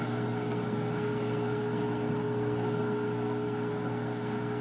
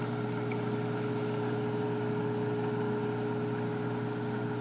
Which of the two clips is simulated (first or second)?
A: first